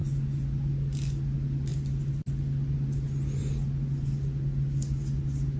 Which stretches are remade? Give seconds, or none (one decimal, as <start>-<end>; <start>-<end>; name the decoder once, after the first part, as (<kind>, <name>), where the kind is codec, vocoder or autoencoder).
none